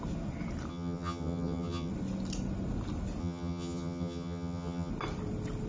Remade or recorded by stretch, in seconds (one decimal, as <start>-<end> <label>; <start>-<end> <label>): 0.0-0.7 recorded; 0.7-1.9 remade; 1.9-3.2 recorded; 3.2-4.9 remade; 4.9-5.7 recorded

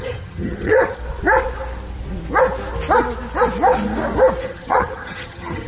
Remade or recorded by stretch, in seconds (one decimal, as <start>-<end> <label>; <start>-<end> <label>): 0.0-1.0 remade; 1.0-4.4 recorded; 4.4-5.7 remade

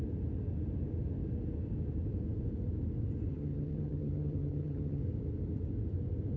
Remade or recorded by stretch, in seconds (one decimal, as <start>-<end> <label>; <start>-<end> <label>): 0.0-3.3 recorded; 3.3-5.0 remade; 5.0-6.4 recorded